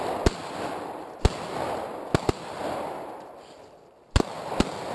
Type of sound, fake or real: real